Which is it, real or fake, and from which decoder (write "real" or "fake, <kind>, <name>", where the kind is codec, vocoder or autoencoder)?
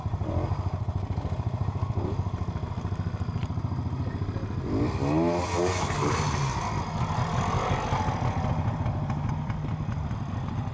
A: real